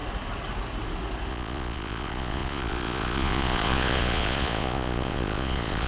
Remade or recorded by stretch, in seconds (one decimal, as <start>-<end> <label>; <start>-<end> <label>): 0.0-1.3 recorded; 1.3-5.9 remade